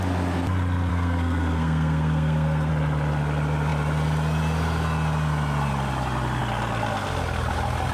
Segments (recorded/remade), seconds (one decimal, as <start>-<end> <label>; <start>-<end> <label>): 0.0-0.9 recorded; 0.9-2.7 remade; 2.7-7.9 recorded